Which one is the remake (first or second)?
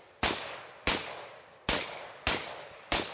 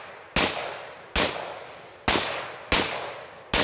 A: first